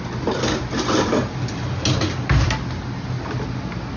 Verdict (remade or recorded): recorded